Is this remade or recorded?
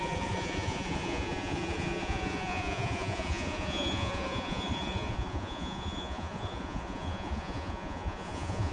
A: remade